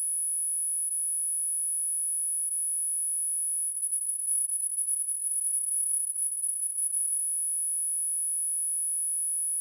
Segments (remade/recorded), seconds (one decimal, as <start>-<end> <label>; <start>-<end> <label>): 0.0-3.7 recorded; 3.7-7.2 remade; 7.2-9.6 recorded

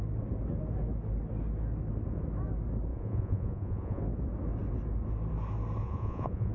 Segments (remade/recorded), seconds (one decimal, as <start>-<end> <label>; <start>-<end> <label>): 0.0-2.9 recorded; 2.9-4.0 remade; 4.0-5.8 recorded; 5.8-6.5 remade